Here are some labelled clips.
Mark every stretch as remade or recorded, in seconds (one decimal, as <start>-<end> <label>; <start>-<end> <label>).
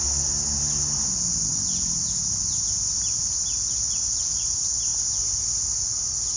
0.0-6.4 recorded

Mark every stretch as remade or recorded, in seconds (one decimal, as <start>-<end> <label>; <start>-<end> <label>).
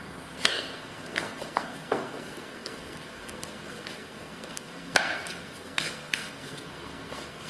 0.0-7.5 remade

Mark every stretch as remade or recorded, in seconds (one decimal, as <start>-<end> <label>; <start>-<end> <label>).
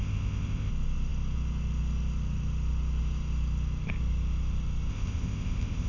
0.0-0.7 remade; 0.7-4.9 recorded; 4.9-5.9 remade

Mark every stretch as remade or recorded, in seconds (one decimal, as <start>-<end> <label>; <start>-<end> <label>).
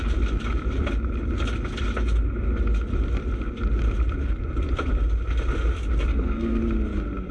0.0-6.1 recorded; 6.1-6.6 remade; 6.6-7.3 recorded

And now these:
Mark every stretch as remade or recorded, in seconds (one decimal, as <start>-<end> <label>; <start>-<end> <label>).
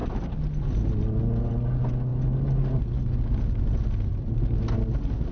0.0-5.3 recorded